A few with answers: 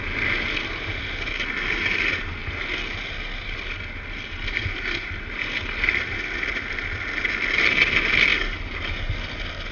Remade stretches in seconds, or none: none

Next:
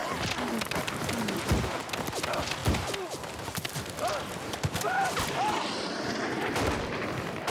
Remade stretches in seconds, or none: none